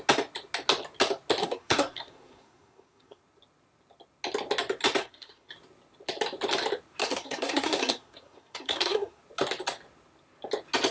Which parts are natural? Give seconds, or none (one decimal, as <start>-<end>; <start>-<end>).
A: 0.0-1.4; 3.2-5.0; 5.5-7.0; 9.2-10.9